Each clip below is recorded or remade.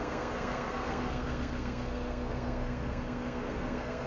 remade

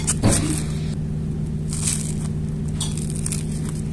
recorded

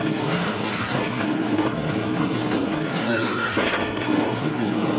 remade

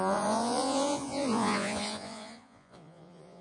remade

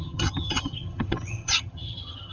remade